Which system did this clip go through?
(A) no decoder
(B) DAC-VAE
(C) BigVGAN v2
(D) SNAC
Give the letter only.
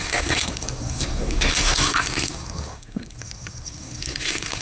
D